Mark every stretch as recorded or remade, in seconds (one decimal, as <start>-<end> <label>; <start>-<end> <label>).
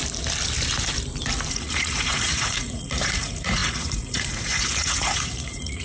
0.0-1.5 recorded; 1.5-5.8 remade